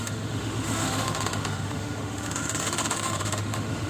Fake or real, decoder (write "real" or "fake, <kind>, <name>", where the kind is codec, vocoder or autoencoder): fake, autoencoder, DAC-VAE